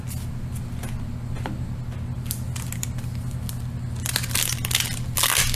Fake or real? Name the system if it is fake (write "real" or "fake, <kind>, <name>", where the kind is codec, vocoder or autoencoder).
real